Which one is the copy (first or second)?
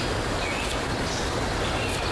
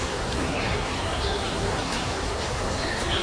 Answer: second